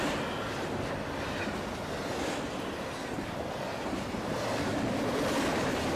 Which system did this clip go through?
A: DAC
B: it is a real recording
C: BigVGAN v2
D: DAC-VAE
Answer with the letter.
B